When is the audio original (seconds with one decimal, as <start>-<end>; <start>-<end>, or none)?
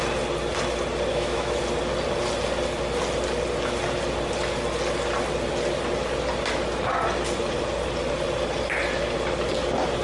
0.0-1.1; 1.6-10.0